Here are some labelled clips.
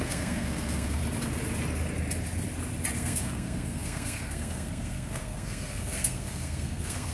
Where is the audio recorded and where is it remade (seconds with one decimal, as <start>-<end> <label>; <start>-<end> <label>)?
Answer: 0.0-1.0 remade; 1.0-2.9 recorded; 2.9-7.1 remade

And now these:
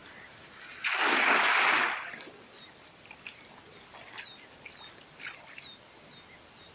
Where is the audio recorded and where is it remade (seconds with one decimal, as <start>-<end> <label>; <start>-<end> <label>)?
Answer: 0.0-6.7 recorded

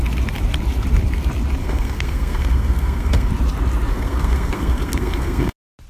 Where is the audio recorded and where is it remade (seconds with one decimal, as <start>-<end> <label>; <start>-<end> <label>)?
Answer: 0.0-1.6 recorded; 1.6-3.3 remade; 3.3-3.9 recorded; 3.9-5.5 remade; 5.5-5.9 recorded

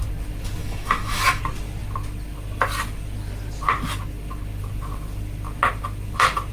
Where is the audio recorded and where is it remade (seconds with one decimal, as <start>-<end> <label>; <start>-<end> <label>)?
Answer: 0.0-0.6 recorded; 0.6-1.4 remade; 1.4-6.5 recorded

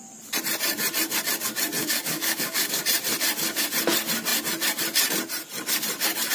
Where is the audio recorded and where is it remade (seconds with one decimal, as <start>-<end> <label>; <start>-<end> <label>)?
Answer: 0.0-1.8 recorded; 1.8-2.8 remade; 2.8-6.3 recorded

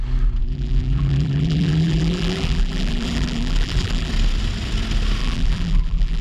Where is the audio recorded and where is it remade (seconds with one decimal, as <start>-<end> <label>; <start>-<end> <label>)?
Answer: 0.0-0.4 recorded; 0.4-4.1 remade; 4.1-5.2 recorded; 5.2-6.2 remade

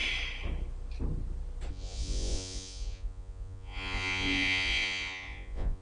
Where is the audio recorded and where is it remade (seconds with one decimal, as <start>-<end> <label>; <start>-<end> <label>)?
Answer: 0.0-1.7 recorded; 1.7-5.8 remade